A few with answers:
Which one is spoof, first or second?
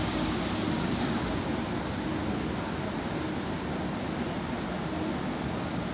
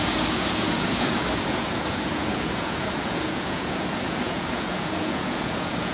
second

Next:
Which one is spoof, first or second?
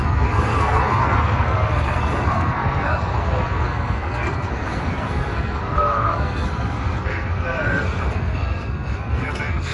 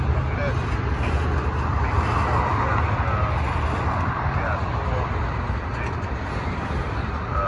first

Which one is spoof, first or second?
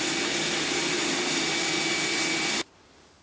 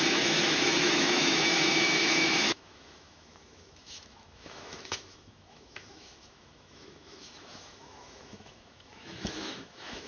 second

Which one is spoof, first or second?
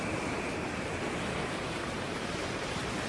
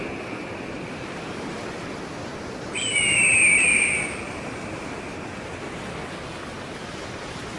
first